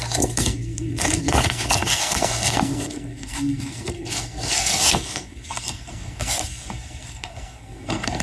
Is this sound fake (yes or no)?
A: yes